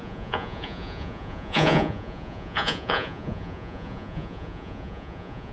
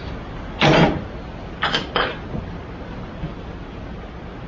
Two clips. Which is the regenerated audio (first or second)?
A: first